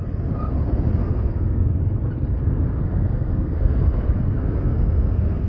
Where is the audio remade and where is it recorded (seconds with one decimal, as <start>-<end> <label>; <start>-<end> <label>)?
0.0-1.0 recorded; 1.0-1.8 remade; 1.8-2.4 recorded; 2.4-5.5 remade